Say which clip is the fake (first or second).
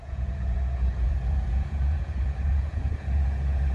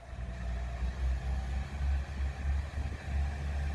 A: first